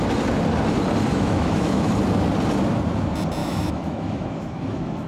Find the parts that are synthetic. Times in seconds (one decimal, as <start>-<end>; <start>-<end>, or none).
1.1-1.9; 3.4-5.1